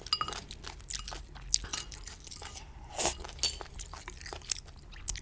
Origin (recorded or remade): recorded